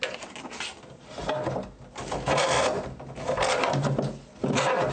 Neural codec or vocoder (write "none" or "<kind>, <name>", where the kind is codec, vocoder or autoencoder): none